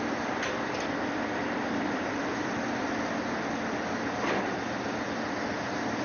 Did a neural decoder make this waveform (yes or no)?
no